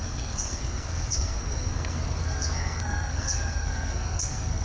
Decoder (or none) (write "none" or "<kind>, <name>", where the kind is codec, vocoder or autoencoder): codec, SNAC